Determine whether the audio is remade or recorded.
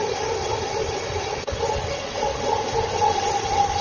recorded